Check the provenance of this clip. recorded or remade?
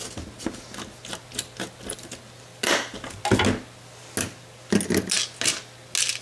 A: recorded